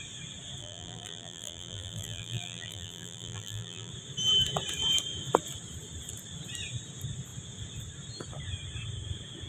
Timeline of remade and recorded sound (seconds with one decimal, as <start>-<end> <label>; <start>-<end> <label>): 0.0-0.6 recorded; 0.6-3.9 remade; 3.9-9.5 recorded